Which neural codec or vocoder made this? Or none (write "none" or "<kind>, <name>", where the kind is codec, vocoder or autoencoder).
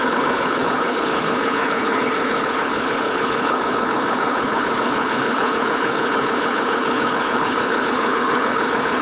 codec, HILCodec